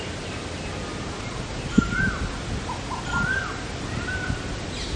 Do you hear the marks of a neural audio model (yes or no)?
no